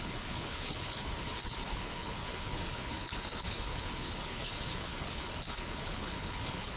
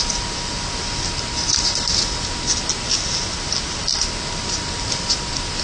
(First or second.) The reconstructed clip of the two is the first